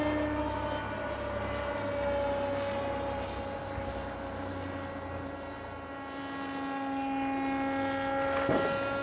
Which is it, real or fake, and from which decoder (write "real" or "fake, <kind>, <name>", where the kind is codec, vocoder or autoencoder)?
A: real